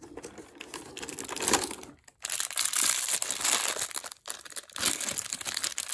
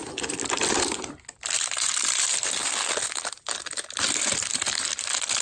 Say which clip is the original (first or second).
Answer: first